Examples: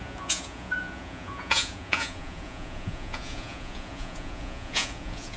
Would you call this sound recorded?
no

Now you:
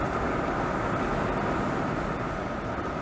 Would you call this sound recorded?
yes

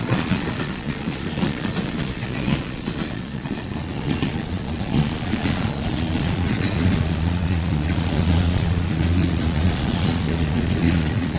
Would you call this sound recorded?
no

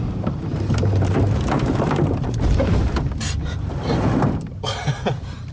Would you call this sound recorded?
no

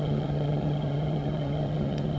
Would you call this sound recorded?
no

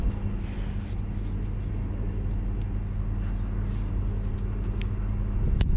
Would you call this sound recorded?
yes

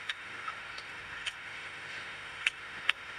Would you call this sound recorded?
no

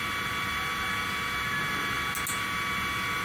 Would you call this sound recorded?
yes